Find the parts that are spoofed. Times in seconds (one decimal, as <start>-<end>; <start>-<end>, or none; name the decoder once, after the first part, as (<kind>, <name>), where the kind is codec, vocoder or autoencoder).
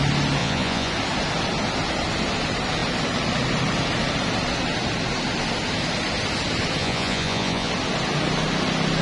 0.4-0.9 (vocoder, Vocos); 6.8-7.7